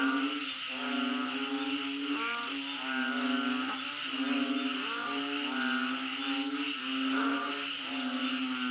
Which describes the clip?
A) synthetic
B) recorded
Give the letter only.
B